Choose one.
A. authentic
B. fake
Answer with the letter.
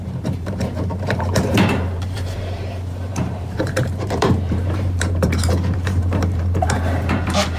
B